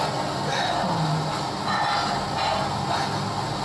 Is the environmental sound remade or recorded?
recorded